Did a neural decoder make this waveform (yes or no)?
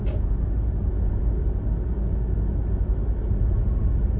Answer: no